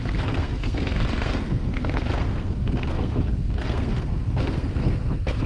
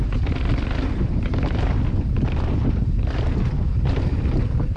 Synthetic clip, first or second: first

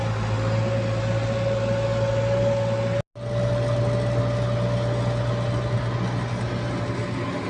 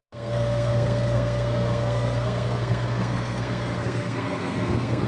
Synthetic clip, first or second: second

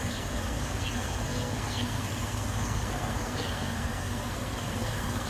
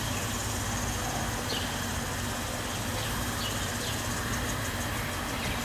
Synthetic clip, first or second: first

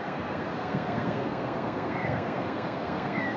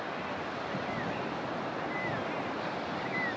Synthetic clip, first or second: first